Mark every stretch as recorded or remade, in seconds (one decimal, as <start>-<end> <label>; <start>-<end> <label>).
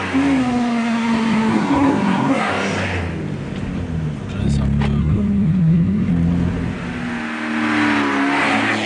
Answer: 0.0-0.4 recorded; 0.4-2.5 remade; 2.5-5.0 recorded; 5.0-6.1 remade; 6.1-8.9 recorded